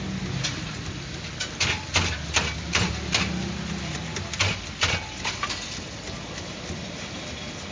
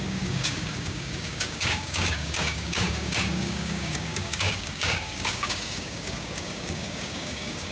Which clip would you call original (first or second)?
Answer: first